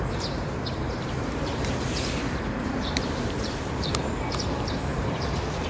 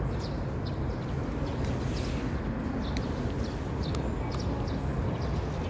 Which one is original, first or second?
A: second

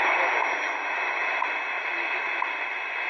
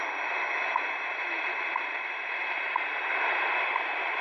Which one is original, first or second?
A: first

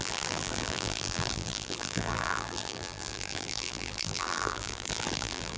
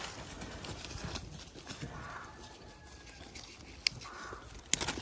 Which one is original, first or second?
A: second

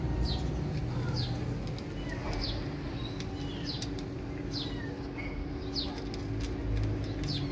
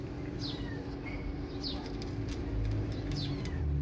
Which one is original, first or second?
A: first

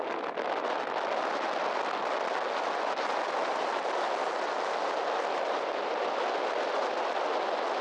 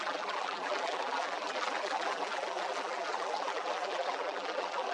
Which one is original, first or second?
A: first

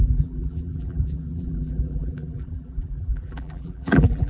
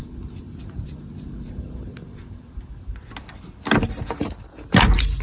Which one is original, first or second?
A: second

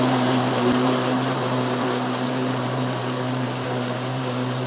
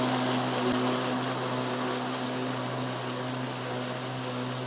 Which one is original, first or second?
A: second